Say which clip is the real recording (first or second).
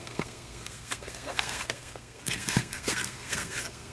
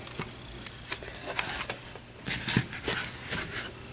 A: second